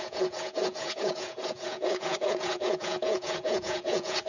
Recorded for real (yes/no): no